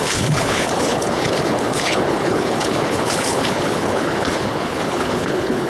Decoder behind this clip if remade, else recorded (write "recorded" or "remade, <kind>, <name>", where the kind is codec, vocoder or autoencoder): remade, codec, HILCodec